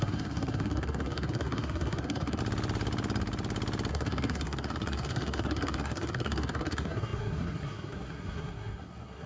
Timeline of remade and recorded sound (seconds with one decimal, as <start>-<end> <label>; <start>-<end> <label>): 0.0-2.4 remade; 2.4-3.9 recorded; 3.9-9.3 remade